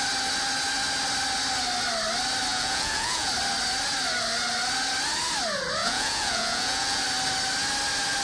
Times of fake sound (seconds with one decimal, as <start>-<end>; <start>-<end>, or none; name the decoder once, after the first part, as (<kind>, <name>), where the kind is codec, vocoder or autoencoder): 2.5-3.3 (vocoder, Vocos); 5.8-7.0